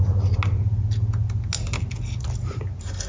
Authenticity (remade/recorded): recorded